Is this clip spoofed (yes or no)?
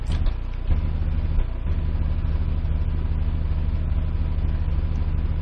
no